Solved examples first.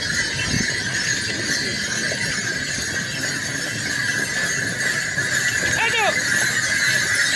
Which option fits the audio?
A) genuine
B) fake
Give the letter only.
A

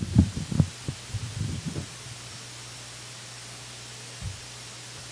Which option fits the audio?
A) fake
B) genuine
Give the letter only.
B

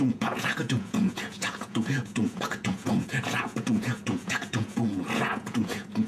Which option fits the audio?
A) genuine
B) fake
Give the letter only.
B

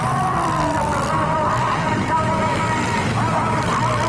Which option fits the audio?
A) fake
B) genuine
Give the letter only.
A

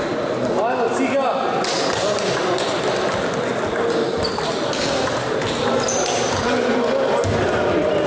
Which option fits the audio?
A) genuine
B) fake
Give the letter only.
A